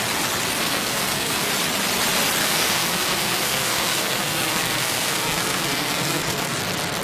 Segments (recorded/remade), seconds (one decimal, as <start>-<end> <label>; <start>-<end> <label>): 0.0-0.6 recorded; 0.6-1.5 remade; 1.5-2.4 recorded; 2.4-6.6 remade; 6.6-7.0 recorded